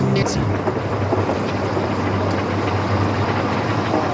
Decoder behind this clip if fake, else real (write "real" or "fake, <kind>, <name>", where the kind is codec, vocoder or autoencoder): real